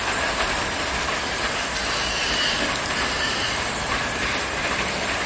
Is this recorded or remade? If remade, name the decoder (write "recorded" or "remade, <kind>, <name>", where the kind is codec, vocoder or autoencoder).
remade, vocoder, BigVGAN v2